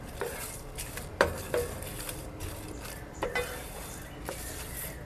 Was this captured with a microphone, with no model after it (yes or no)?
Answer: yes